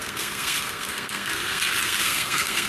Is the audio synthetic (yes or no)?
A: yes